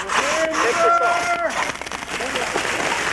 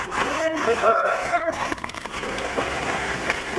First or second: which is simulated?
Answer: second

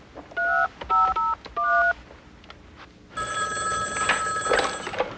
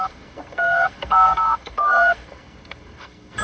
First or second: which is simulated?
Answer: second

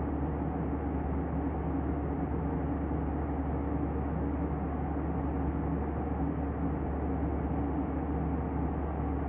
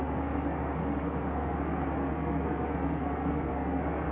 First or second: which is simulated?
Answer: second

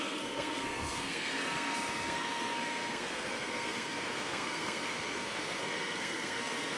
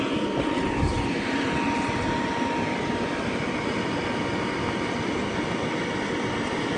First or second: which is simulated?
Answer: first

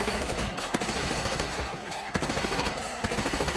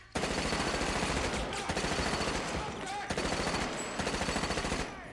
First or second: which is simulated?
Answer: first